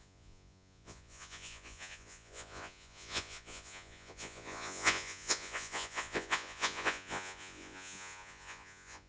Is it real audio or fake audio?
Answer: fake